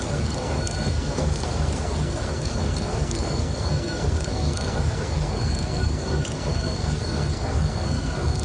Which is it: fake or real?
fake